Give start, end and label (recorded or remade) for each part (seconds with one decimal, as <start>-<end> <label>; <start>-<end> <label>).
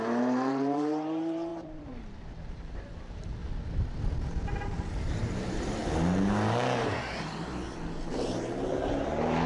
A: 0.0-3.4 remade; 3.4-4.6 recorded; 4.6-5.8 remade; 5.8-8.1 recorded; 8.1-9.5 remade